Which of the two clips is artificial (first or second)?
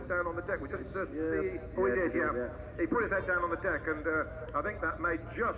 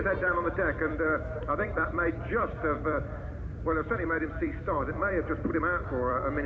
second